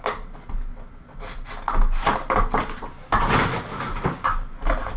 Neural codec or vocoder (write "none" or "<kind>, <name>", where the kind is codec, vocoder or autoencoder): none